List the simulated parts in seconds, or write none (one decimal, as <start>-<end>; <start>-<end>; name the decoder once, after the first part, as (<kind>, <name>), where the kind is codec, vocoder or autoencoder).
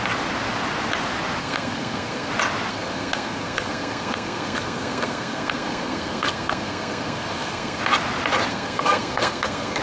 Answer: 1.4-2.3 (codec, SNAC); 2.7-7.8; 8.5-9.8